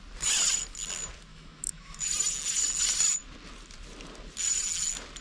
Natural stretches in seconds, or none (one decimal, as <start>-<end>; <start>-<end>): 0.0-1.3; 2.0-5.2